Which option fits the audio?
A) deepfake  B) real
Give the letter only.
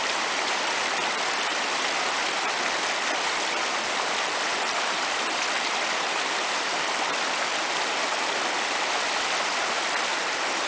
A